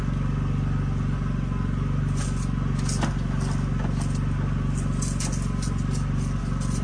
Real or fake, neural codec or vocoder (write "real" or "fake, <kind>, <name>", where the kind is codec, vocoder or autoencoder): real